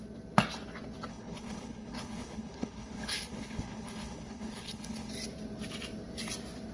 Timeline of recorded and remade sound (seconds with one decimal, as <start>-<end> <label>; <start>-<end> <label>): 0.0-1.1 recorded; 1.1-5.1 remade; 5.1-6.7 recorded